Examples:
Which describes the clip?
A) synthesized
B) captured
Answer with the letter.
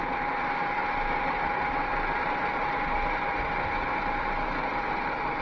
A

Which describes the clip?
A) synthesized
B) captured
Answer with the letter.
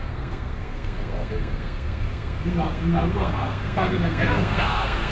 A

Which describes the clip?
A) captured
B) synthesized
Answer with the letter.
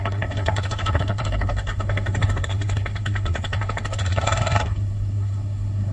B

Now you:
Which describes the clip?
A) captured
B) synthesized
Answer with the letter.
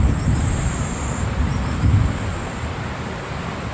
A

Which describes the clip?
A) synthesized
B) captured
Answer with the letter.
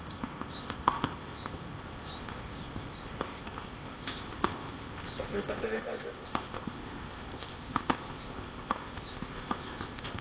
A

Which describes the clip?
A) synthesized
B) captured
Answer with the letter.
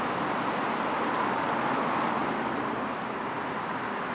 B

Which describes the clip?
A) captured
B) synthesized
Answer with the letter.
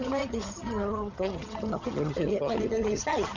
B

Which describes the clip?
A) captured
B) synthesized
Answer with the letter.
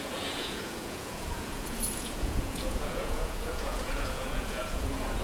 B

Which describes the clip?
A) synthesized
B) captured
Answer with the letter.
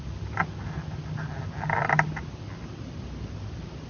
B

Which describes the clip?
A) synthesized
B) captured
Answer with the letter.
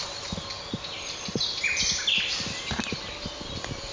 B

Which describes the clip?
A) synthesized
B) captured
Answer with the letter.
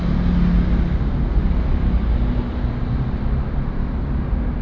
B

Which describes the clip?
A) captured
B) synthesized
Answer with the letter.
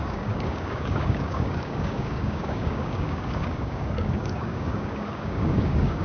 B